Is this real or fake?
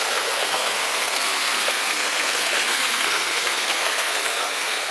fake